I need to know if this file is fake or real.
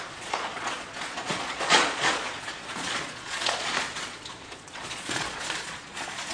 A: fake